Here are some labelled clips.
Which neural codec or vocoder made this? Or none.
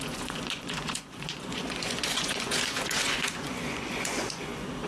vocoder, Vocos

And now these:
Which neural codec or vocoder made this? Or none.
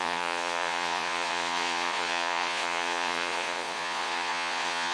vocoder, Vocos